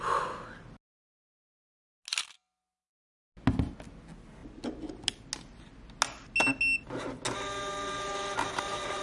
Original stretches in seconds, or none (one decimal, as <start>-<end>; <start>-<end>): 0.0-9.0